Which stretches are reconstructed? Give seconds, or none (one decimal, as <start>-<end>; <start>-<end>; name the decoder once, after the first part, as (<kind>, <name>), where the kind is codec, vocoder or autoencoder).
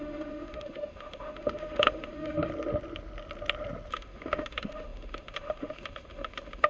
0.0-2.5 (autoencoder, DAC-VAE); 3.9-6.7